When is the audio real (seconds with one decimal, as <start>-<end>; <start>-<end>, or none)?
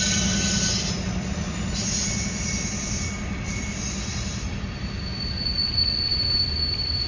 0.0-6.1